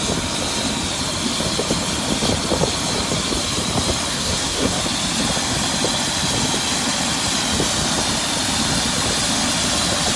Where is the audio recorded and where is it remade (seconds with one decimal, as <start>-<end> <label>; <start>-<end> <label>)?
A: 0.0-4.1 recorded; 4.1-4.8 remade; 4.8-10.2 recorded